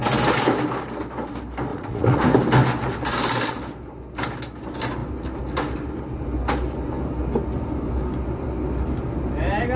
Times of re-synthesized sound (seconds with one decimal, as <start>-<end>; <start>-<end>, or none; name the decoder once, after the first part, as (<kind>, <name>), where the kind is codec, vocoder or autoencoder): 1.7-2.2 (vocoder, Vocos)